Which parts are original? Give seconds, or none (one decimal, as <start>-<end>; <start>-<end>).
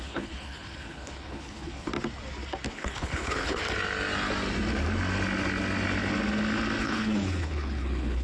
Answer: 1.9-2.7; 3.6-6.8